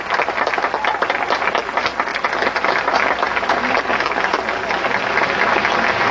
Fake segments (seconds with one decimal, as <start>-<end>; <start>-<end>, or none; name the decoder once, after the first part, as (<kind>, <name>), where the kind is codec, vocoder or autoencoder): none